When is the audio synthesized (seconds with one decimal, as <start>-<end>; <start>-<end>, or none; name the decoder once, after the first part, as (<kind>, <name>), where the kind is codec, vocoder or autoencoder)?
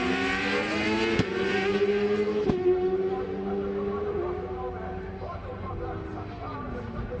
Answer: none